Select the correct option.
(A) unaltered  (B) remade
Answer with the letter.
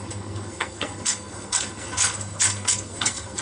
B